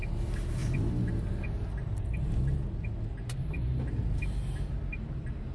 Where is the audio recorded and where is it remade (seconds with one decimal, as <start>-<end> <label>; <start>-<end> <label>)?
0.0-5.5 recorded